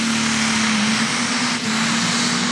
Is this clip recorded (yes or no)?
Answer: yes